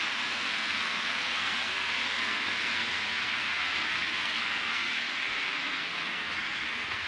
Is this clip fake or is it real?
fake